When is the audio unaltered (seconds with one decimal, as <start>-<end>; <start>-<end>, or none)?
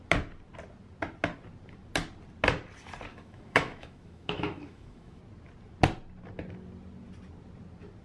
0.0-3.1; 5.2-8.0